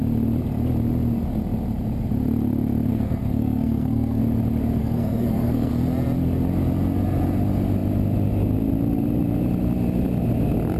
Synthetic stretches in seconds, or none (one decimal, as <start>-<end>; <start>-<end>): 2.9-4.2; 4.8-5.7